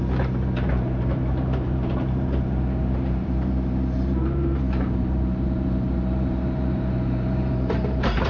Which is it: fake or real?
fake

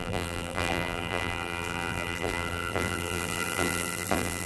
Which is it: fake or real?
fake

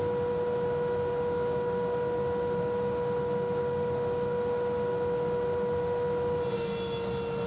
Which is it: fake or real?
real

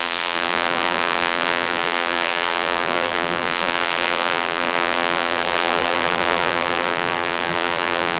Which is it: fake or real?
fake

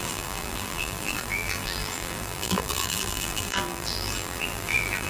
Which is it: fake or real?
fake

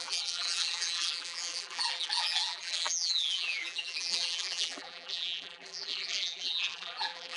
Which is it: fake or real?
fake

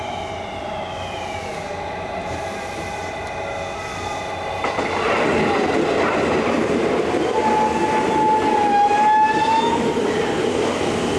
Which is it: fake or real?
real